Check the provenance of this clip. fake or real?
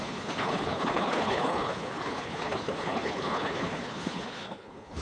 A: fake